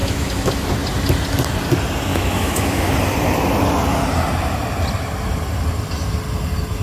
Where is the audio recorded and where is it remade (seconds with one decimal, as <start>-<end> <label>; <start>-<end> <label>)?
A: 0.0-0.7 remade; 0.7-2.1 recorded; 2.1-2.9 remade; 2.9-6.8 recorded